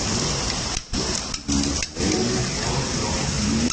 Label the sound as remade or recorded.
recorded